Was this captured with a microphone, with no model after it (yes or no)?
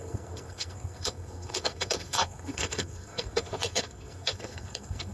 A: no